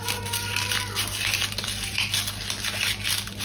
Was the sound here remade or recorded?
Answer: recorded